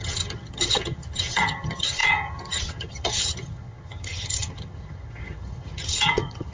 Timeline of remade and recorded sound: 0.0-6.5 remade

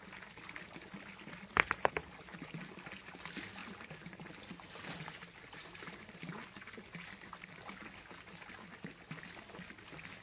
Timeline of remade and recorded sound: 0.0-10.2 recorded

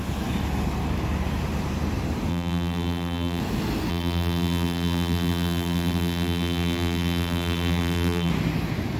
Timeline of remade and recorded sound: 0.0-2.3 recorded; 2.3-3.4 remade; 3.4-3.9 recorded; 3.9-8.3 remade; 8.3-9.0 recorded

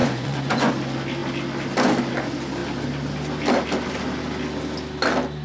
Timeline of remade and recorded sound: 0.0-0.7 remade; 0.7-5.4 recorded

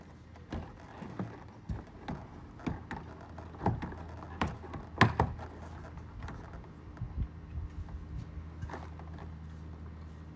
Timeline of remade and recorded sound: 0.0-10.4 recorded

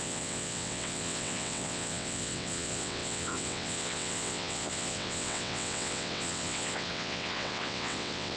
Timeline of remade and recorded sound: 0.0-8.4 remade

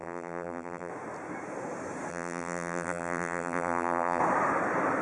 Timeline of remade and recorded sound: 0.0-0.9 remade; 0.9-2.1 recorded; 2.1-4.2 remade; 4.2-5.0 recorded

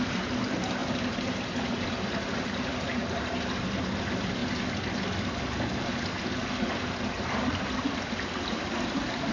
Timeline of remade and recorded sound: 0.0-0.8 recorded; 0.8-3.2 remade; 3.2-9.3 recorded